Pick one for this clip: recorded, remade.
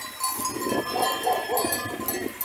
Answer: recorded